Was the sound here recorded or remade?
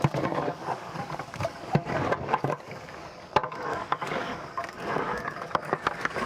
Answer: remade